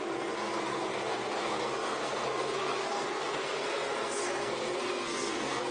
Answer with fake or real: fake